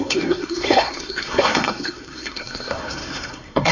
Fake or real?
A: fake